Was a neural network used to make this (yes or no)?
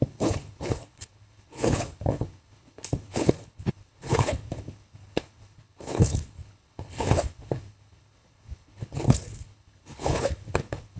yes